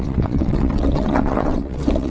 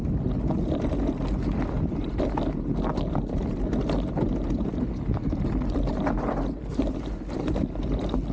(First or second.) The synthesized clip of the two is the first